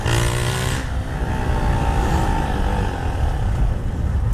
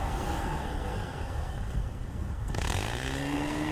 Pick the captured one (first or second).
first